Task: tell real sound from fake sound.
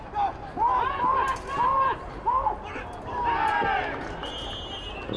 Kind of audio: real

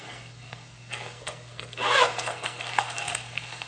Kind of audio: fake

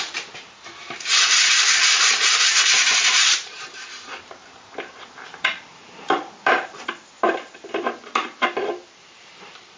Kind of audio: fake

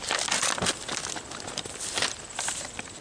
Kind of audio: real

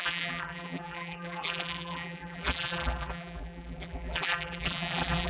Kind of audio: fake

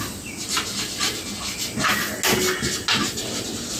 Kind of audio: real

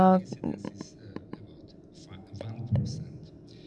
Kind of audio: real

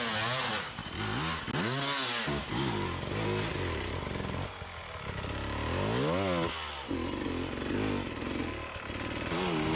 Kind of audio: real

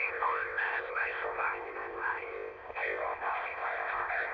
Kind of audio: fake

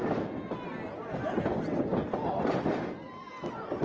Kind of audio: real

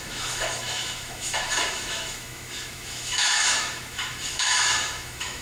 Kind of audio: fake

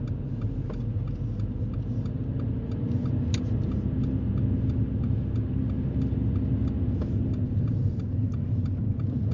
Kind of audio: real